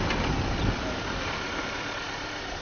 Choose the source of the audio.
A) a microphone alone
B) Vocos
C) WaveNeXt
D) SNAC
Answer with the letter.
A